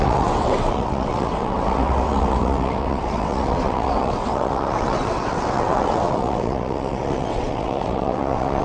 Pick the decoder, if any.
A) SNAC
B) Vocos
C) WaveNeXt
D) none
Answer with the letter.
C